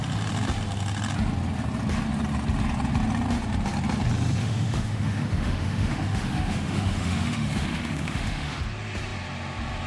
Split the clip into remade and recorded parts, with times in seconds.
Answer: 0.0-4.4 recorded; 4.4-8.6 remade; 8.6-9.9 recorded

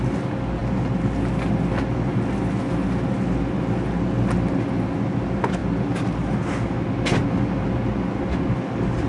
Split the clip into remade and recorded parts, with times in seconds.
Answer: 0.0-9.1 recorded